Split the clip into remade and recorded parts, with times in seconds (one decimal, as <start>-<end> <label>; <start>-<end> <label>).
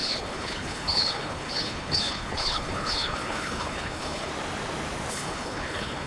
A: 0.0-4.3 remade; 4.3-5.1 recorded; 5.1-6.1 remade